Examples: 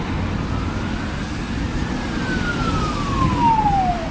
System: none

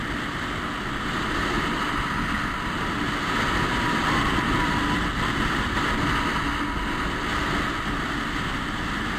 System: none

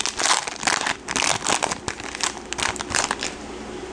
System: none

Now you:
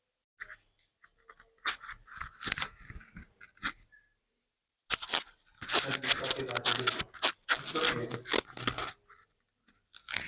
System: none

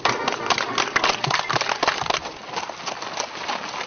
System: none